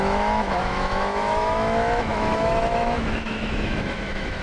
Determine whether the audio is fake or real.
fake